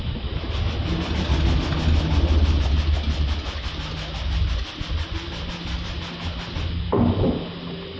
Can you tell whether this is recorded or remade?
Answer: recorded